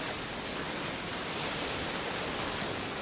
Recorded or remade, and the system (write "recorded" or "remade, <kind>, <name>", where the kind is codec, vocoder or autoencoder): recorded